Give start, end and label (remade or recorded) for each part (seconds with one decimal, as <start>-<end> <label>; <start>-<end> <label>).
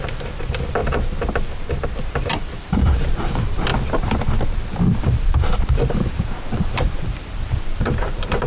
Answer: 0.0-0.8 remade; 0.8-2.0 recorded; 2.0-3.7 remade; 3.7-5.0 recorded; 5.0-8.5 remade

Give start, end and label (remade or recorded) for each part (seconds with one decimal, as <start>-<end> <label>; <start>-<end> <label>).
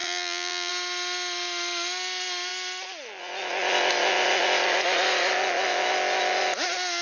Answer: 0.0-0.7 remade; 0.7-7.0 recorded